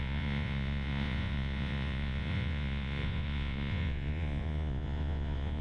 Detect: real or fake fake